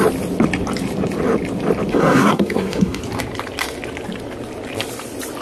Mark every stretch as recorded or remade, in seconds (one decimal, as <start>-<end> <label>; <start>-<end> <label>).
0.0-1.9 recorded; 1.9-3.0 remade; 3.0-5.4 recorded